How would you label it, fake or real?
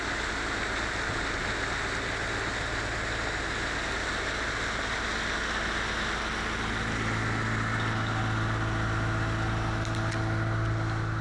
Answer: real